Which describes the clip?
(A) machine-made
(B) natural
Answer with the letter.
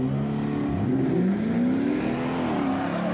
B